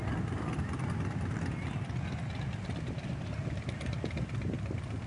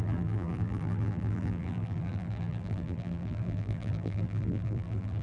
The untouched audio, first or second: first